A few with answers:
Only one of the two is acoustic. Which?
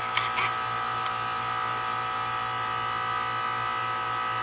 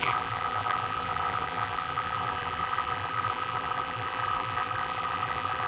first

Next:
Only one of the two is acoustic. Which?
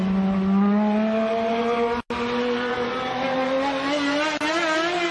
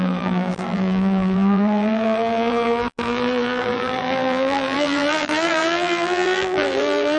first